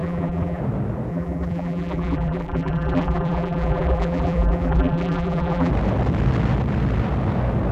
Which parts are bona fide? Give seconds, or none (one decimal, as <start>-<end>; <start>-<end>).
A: 0.6-1.1; 5.7-7.7